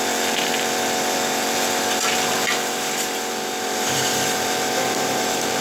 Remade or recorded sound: remade